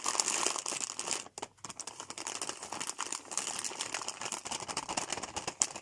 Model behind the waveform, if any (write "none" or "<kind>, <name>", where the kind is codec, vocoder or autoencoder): none